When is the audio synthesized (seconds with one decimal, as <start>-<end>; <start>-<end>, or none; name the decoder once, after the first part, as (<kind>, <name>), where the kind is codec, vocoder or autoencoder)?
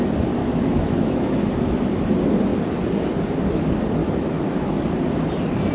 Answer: 0.4-1.9 (autoencoder, DAC-VAE); 4.0-4.8